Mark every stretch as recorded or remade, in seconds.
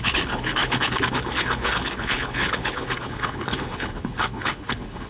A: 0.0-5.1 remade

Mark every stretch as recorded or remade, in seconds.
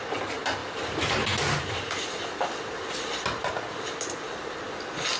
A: 0.0-5.2 recorded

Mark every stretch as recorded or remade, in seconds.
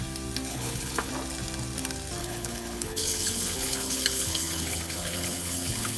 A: 0.0-0.5 recorded; 0.5-1.1 remade; 1.1-2.2 recorded; 2.2-6.0 remade